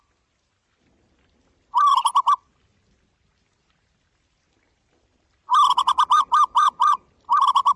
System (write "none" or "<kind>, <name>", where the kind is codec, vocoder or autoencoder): none